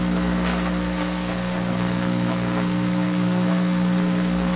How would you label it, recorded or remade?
remade